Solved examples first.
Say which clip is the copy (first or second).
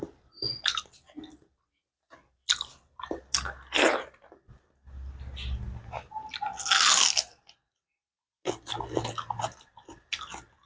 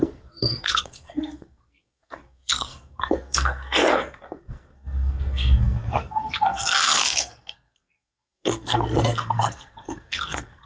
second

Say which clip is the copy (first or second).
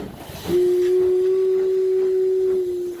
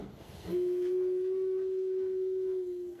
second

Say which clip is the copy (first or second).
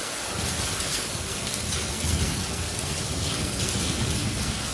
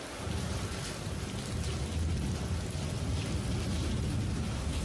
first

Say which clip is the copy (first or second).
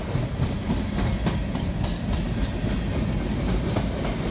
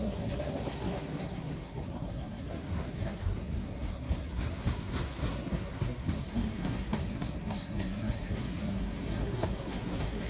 second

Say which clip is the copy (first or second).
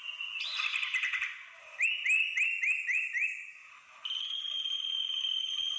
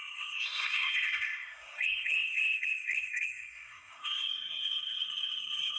second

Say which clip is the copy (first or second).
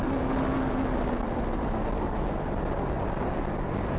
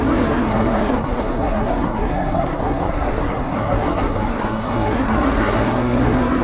second